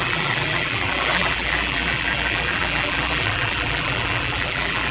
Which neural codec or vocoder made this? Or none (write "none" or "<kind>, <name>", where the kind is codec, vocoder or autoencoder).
vocoder, BigVGAN v2